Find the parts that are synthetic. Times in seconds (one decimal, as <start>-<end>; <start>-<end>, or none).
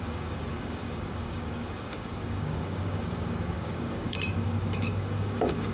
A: 0.0-5.7